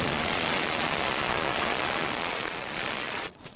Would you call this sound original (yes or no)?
no